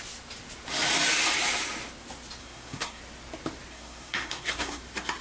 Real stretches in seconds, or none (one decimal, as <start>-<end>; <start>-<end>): 0.0-2.4; 3.0-3.7; 4.8-5.2